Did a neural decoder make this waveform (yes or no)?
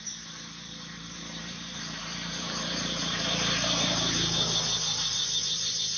yes